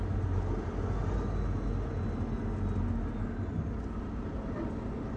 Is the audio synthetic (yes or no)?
no